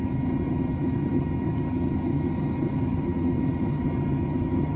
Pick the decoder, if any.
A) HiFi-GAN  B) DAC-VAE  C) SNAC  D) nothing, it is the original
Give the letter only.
A